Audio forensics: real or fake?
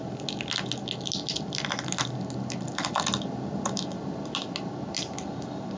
real